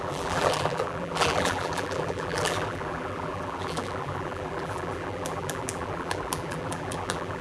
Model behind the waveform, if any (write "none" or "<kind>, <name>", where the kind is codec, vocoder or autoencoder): vocoder, BigVGAN v2